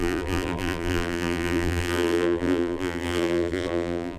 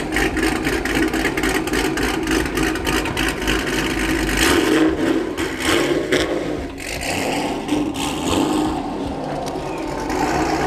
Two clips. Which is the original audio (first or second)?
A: second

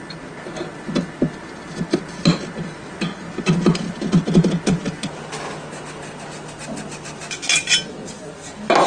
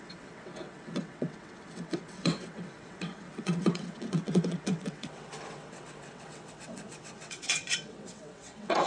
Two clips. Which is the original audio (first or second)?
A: first